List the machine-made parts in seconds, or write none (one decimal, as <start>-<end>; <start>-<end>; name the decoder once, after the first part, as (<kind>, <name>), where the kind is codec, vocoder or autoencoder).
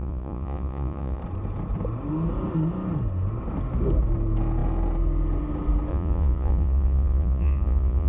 0.0-1.2 (vocoder, Vocos); 5.9-8.1